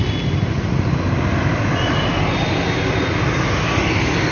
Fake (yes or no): no